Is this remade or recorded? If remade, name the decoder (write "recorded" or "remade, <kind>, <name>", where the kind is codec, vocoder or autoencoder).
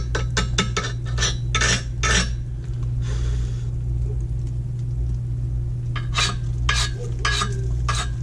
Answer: recorded